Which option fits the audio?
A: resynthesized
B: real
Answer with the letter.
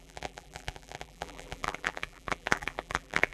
A